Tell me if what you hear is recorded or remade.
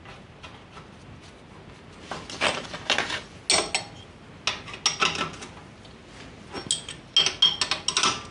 recorded